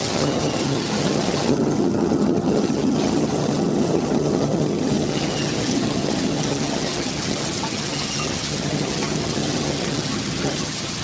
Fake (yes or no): yes